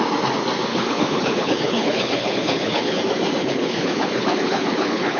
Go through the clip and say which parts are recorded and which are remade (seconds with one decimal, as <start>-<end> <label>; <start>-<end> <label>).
0.0-0.7 recorded; 0.7-3.0 remade; 3.0-3.4 recorded; 3.4-5.2 remade